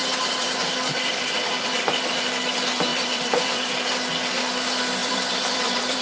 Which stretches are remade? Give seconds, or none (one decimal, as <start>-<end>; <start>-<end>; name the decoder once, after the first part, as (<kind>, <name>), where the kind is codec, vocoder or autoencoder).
0.0-0.6 (vocoder, BigVGAN v2); 2.9-3.6; 5.0-6.0